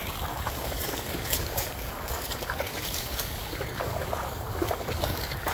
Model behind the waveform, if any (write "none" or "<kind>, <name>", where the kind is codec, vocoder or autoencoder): codec, DAC